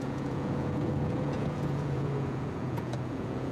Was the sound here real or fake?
fake